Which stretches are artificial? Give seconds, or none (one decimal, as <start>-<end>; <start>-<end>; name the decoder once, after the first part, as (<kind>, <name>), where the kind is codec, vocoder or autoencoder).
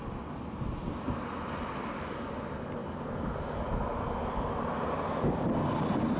none